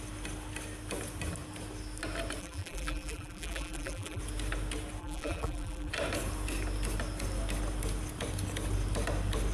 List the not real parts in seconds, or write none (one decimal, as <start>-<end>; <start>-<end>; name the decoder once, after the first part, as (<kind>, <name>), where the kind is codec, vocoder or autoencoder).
2.4-4.2 (vocoder, BigVGAN v2); 5.0-5.9